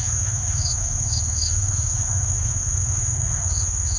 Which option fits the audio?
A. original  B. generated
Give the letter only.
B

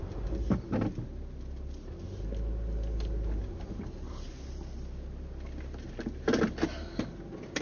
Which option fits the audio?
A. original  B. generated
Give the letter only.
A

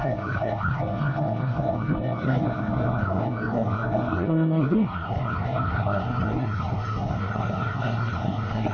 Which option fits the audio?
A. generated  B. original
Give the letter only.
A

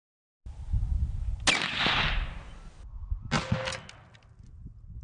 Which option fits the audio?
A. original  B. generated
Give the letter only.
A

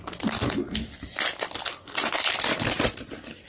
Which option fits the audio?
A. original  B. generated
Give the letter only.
A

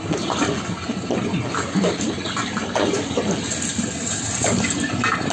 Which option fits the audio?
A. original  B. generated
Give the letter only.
A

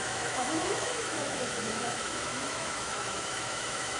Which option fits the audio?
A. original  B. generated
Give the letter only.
B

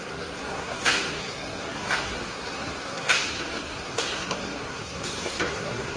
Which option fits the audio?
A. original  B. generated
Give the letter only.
B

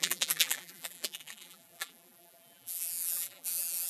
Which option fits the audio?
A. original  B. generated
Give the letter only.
B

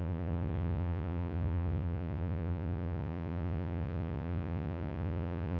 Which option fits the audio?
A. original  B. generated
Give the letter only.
B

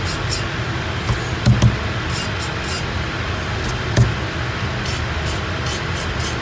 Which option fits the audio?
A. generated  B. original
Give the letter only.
B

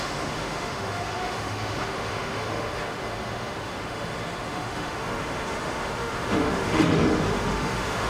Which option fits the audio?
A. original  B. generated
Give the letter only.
B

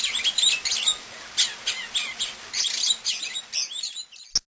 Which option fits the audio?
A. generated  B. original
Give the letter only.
B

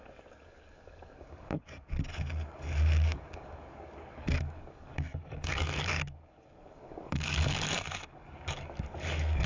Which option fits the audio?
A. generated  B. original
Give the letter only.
A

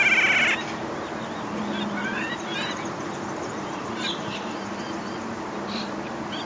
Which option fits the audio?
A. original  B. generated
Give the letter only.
A